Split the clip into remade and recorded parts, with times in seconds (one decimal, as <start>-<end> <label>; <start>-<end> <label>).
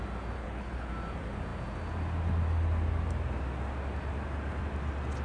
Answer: 0.0-0.4 recorded; 0.4-0.9 remade; 0.9-5.2 recorded